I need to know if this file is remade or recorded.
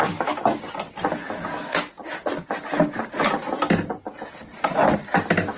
recorded